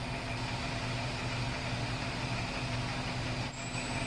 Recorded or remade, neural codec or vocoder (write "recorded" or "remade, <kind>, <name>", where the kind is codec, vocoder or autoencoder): recorded